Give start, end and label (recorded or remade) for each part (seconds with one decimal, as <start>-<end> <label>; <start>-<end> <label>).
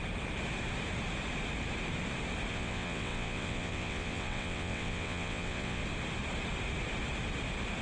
0.0-2.5 recorded; 2.5-5.8 remade; 5.8-7.8 recorded